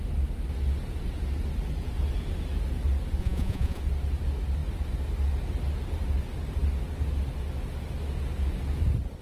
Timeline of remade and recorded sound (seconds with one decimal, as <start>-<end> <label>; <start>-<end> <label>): 0.0-3.2 recorded; 3.2-3.8 remade; 3.8-9.2 recorded